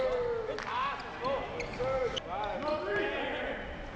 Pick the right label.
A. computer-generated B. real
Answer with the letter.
B